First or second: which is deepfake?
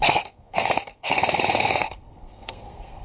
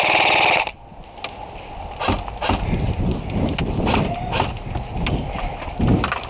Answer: first